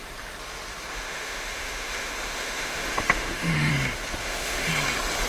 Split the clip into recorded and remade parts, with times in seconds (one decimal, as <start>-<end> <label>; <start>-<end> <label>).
0.0-0.9 recorded; 0.9-3.7 remade; 3.7-4.2 recorded; 4.2-4.7 remade; 4.7-5.3 recorded